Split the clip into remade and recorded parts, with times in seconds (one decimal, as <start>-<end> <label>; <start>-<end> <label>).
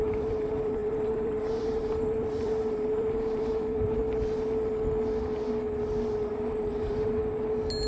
0.0-4.0 remade; 4.0-6.3 recorded; 6.3-7.2 remade; 7.2-7.9 recorded